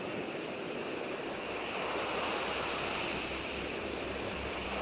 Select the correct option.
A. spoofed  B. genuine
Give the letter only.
A